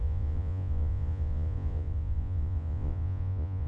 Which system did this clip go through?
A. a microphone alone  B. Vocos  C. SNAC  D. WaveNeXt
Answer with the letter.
B